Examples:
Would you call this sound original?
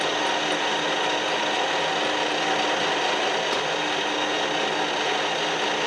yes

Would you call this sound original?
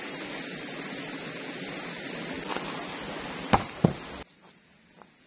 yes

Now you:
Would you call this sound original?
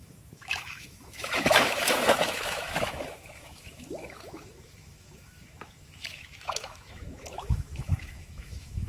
no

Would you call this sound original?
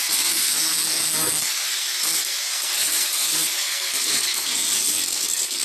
no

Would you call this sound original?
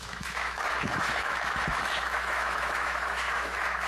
no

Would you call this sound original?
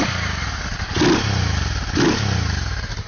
yes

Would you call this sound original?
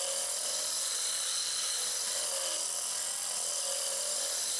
yes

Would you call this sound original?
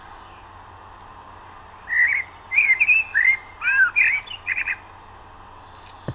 yes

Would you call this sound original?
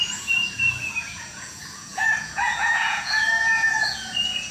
no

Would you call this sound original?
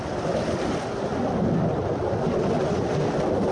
yes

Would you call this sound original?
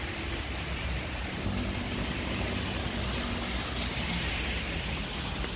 yes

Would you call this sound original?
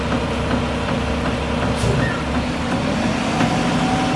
yes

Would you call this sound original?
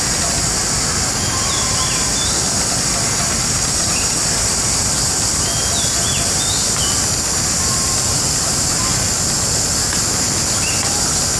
yes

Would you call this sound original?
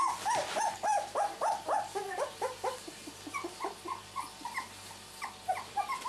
no